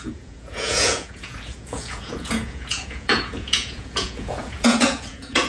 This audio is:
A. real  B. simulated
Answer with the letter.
B